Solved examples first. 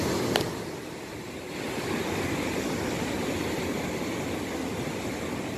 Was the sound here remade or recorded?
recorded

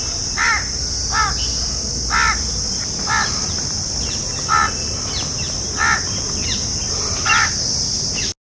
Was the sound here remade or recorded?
recorded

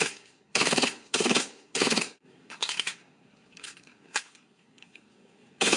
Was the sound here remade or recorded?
remade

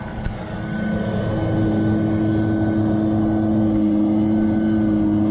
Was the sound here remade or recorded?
recorded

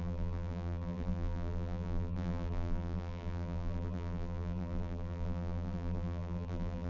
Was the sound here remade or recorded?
remade